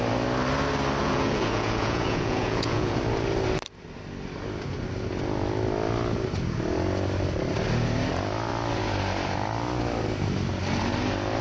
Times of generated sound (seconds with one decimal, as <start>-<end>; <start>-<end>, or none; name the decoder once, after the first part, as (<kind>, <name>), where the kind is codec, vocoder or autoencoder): 1.0-3.0 (vocoder, Vocos)